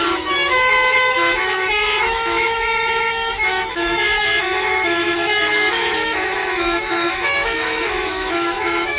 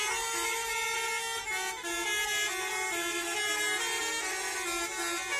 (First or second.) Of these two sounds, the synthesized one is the first